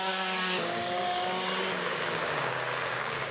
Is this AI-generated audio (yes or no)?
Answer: yes